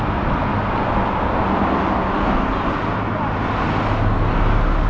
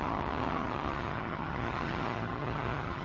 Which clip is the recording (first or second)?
first